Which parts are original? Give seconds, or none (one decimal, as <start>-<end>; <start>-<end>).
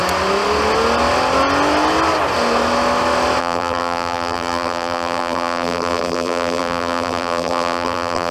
0.0-3.4